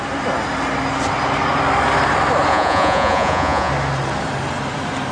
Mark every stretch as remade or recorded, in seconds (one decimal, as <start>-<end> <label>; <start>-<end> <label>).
0.0-2.5 recorded; 2.5-3.7 remade; 3.7-5.1 recorded